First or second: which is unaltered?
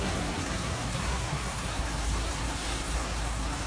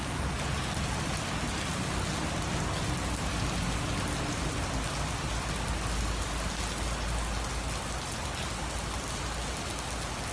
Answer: second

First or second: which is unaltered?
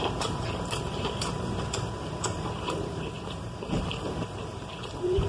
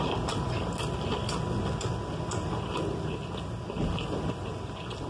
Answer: second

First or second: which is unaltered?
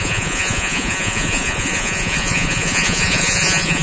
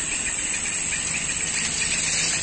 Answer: second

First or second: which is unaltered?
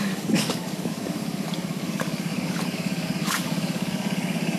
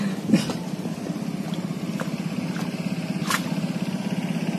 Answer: second